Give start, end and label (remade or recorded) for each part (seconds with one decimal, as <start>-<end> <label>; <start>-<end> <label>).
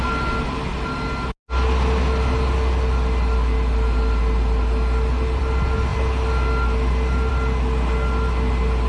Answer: 0.0-8.9 recorded